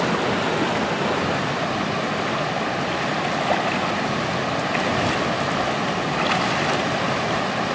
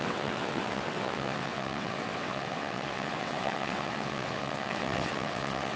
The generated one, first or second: second